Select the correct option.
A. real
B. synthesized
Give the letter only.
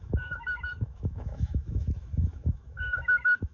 B